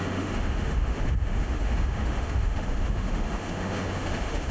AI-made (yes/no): yes